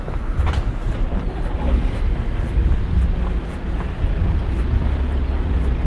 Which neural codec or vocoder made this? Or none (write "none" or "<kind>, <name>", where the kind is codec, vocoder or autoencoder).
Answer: none